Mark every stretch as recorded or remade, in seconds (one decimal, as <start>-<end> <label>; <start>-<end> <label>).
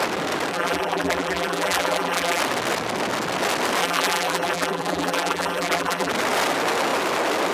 0.0-0.5 recorded; 0.5-2.4 remade; 2.4-3.8 recorded; 3.8-6.1 remade; 6.1-7.5 recorded